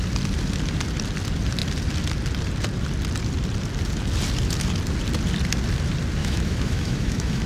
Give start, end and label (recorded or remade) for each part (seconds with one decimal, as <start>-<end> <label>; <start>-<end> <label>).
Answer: 0.0-6.2 recorded; 6.2-7.5 remade